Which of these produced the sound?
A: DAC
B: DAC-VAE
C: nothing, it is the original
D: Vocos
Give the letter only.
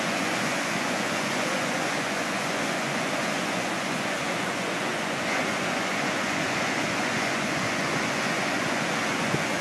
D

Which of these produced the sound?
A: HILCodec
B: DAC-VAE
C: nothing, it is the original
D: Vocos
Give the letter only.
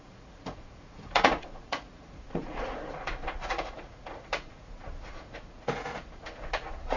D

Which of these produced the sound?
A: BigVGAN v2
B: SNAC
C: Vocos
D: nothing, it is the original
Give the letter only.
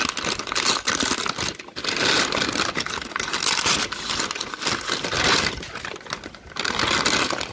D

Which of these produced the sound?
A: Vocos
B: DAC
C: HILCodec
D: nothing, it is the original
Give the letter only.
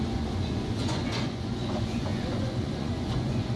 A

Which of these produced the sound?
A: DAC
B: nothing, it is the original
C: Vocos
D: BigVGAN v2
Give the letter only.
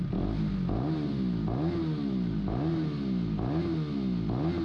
B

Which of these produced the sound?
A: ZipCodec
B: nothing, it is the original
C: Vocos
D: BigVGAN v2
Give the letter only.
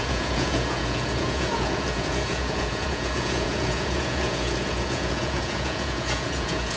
C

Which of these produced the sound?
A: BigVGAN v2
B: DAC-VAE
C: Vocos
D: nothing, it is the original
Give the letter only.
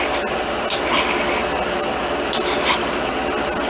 D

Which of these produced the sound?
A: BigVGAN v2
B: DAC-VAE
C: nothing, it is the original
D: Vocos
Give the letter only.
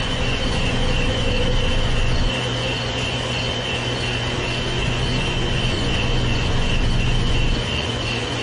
D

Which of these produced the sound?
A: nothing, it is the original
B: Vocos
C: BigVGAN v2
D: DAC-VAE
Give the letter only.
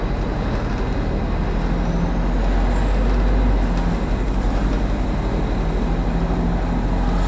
A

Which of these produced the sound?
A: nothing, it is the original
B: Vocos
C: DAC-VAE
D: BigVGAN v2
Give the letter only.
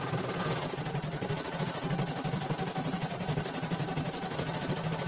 A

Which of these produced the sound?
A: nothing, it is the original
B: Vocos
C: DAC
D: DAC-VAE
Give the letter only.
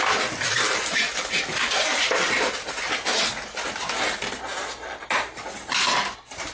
A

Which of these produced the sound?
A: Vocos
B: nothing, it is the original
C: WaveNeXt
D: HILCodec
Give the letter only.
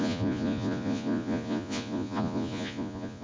A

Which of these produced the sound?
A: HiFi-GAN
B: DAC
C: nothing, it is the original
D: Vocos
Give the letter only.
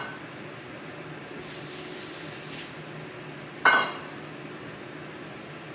C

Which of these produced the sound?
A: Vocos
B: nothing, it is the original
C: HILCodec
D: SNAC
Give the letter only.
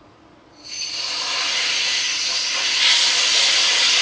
B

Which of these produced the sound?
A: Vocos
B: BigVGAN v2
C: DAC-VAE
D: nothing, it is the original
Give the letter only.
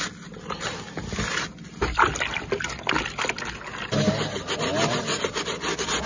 D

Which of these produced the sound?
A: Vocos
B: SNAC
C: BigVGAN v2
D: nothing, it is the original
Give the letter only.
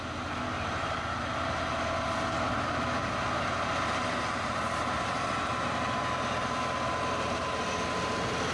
D